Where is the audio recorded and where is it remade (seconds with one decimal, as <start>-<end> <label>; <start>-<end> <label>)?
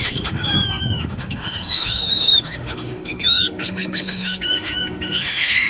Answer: 0.0-5.7 remade